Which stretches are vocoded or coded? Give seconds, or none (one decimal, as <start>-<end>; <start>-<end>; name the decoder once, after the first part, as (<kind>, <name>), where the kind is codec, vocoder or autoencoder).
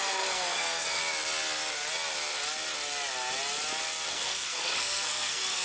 0.0-1.0 (codec, SNAC); 4.1-5.6